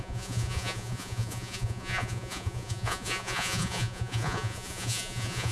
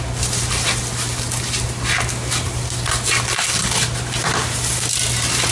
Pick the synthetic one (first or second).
first